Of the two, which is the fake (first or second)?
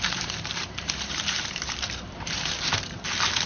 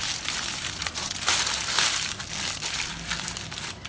first